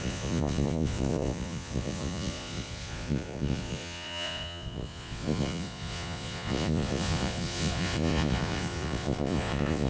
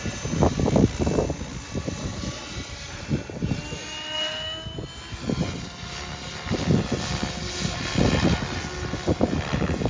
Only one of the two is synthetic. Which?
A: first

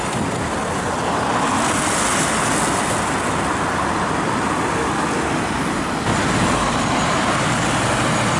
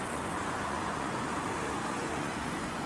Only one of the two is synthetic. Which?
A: second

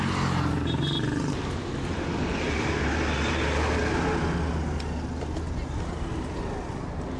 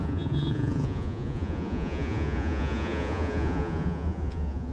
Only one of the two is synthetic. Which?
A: second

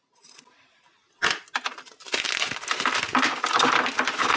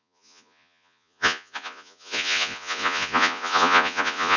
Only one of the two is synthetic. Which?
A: second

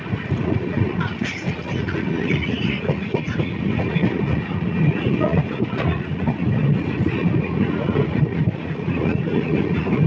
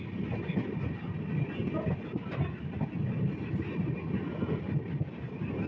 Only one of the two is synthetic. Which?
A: first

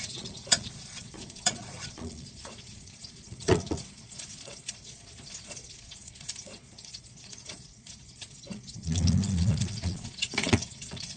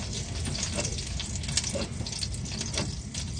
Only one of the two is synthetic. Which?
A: first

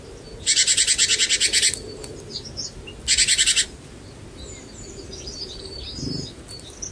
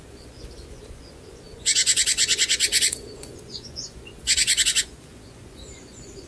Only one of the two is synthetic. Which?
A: second